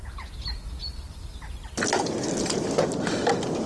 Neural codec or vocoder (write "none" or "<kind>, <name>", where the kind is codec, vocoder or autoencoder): none